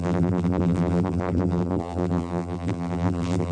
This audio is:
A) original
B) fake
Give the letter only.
B